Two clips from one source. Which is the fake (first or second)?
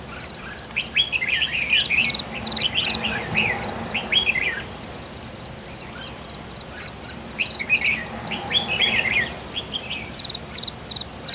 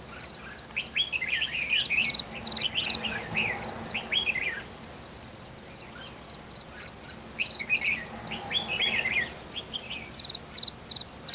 first